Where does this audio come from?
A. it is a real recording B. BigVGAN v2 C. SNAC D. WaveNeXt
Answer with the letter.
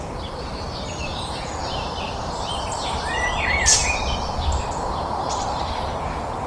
B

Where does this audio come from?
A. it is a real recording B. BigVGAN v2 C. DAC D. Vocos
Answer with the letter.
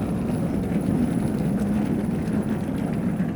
B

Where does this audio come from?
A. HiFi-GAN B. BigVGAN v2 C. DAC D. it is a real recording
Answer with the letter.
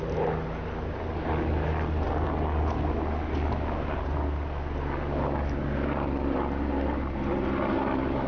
D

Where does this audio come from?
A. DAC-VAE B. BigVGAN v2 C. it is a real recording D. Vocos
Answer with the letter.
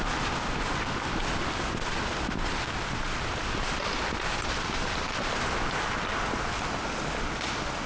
C